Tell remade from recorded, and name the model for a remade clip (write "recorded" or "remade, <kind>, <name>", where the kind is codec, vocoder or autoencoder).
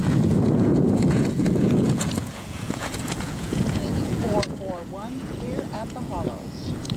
remade, vocoder, Vocos